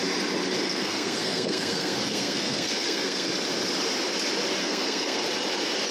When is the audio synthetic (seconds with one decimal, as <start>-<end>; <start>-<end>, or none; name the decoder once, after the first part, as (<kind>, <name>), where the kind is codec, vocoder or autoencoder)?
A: 0.7-3.3 (codec, SNAC); 4.6-5.2